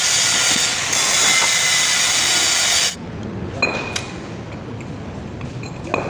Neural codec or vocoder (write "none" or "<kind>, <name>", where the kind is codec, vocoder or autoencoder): none